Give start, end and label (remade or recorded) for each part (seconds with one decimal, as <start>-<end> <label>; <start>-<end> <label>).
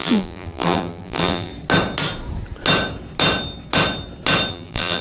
0.0-1.5 remade; 1.5-4.5 recorded; 4.5-5.0 remade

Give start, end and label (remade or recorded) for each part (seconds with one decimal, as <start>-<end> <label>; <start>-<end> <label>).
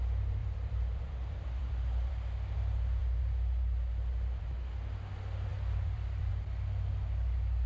0.0-0.4 recorded; 0.4-2.1 remade; 2.1-5.5 recorded; 5.5-6.3 remade; 6.3-7.7 recorded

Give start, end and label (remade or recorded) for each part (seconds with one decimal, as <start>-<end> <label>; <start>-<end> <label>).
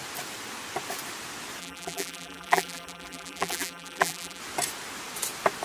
0.0-1.6 recorded; 1.6-4.4 remade; 4.4-5.6 recorded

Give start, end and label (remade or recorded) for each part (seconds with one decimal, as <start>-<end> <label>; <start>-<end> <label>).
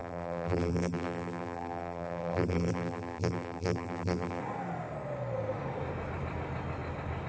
0.0-4.4 remade; 4.4-7.3 recorded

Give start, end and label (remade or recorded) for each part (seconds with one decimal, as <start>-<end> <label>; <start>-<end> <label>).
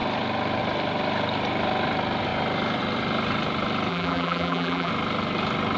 0.0-3.9 recorded; 3.9-4.9 remade; 4.9-5.8 recorded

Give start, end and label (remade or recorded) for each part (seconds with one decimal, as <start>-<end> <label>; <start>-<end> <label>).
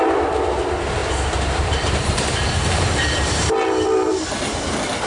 0.0-1.0 recorded; 1.0-4.1 remade; 4.1-5.1 recorded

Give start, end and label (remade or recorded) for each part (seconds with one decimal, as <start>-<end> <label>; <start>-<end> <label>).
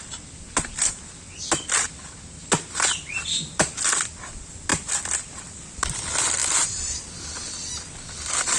0.0-8.6 recorded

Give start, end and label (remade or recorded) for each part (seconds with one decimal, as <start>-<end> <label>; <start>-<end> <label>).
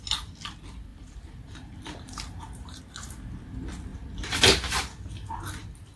0.0-0.9 recorded; 0.9-2.8 remade; 2.8-3.9 recorded; 3.9-4.4 remade; 4.4-6.0 recorded